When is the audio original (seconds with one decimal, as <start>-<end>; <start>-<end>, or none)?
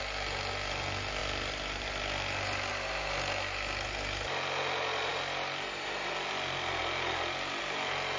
0.0-1.2; 2.7-5.1; 6.7-8.2